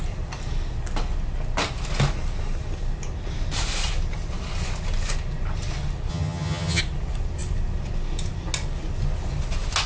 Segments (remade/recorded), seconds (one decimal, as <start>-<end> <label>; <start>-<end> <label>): 0.0-6.1 recorded; 6.1-6.8 remade; 6.8-9.9 recorded